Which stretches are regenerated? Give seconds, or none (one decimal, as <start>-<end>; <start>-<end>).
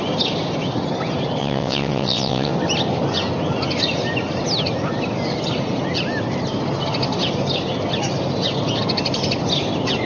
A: 1.4-2.5